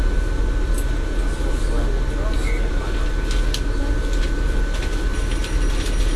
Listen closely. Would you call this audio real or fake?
real